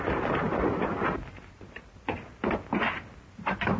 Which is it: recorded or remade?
recorded